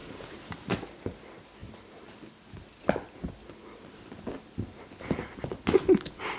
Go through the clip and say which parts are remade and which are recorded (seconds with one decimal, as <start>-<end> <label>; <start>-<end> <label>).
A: 0.0-6.4 recorded